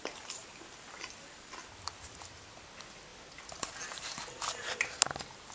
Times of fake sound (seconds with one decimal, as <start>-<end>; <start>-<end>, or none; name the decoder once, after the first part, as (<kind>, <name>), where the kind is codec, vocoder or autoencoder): none